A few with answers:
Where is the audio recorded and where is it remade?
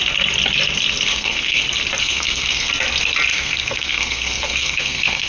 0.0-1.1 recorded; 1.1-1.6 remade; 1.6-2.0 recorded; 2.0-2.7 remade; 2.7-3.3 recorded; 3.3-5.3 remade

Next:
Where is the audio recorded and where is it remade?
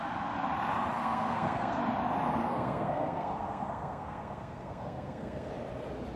0.0-1.0 recorded; 1.0-1.8 remade; 1.8-2.4 recorded; 2.4-5.5 remade; 5.5-6.2 recorded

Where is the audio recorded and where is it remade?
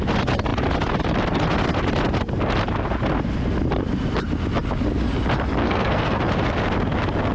0.0-5.6 recorded; 5.6-6.2 remade; 6.2-7.3 recorded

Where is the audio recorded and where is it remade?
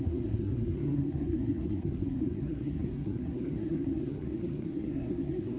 0.0-5.6 remade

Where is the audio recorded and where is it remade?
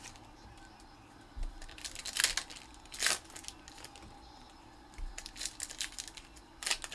0.0-6.9 recorded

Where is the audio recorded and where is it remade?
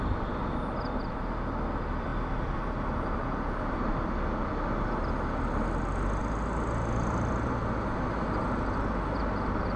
0.0-9.8 recorded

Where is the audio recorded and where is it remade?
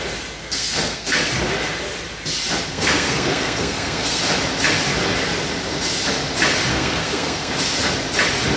0.0-0.4 recorded; 0.4-1.3 remade; 1.3-2.7 recorded; 2.7-4.2 remade; 4.2-6.7 recorded; 6.7-7.5 remade; 7.5-8.6 recorded